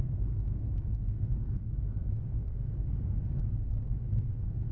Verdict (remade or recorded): remade